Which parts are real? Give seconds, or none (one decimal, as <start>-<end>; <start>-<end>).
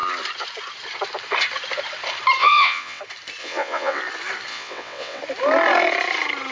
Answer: 0.0-2.4; 3.0-3.4; 4.0-4.5; 5.2-6.5